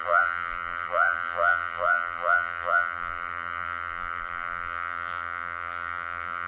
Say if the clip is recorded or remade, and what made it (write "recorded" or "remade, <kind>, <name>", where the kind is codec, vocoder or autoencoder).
remade, vocoder, BigVGAN v2